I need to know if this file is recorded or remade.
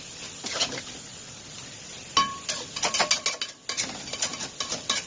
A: recorded